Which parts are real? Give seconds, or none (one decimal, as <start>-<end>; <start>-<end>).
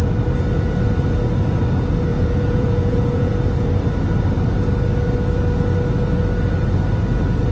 0.0-2.1; 3.3-7.5